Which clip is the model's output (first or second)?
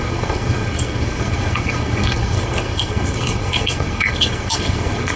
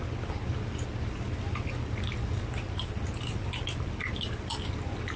first